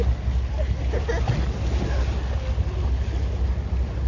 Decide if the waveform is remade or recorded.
recorded